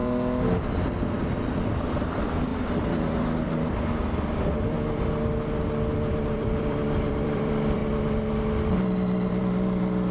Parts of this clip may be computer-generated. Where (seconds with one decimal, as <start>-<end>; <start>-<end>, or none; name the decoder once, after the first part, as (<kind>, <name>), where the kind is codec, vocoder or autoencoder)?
1.4-2.5 (vocoder, BigVGAN v2); 6.1-7.8